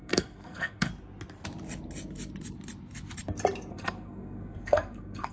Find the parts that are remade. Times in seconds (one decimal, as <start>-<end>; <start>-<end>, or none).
0.0-0.9; 3.7-5.3